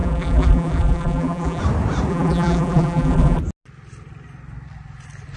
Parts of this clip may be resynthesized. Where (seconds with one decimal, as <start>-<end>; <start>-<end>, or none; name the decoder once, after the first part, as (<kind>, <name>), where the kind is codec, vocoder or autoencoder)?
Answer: 0.0-1.6 (vocoder, BigVGAN v2); 2.1-3.4